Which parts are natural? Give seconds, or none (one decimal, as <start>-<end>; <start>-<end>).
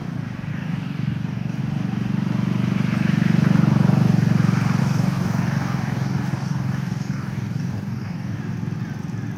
0.0-0.5; 1.6-4.8; 8.4-9.4